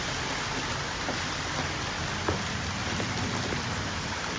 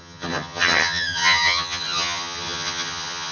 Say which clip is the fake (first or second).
second